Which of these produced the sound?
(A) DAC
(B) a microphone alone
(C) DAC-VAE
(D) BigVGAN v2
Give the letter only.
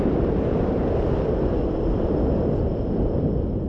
B